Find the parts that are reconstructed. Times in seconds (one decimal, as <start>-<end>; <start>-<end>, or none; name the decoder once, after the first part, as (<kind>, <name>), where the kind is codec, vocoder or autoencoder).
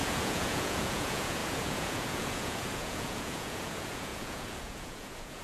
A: 0.0-5.4 (vocoder, Vocos)